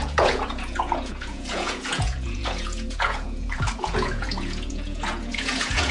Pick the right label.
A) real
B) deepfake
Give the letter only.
B